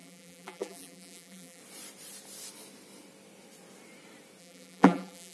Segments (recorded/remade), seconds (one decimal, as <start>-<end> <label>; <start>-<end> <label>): 0.0-1.6 remade; 1.6-4.4 recorded; 4.4-5.3 remade